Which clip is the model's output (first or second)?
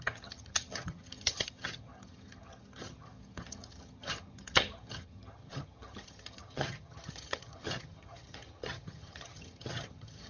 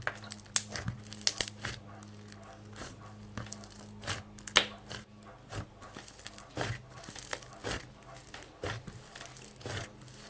first